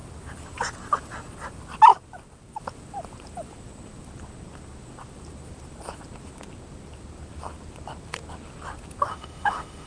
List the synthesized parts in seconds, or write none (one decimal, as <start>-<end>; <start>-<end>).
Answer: 9.1-9.9